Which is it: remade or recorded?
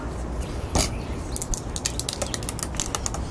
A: recorded